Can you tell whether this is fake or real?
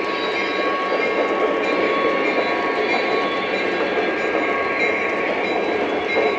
real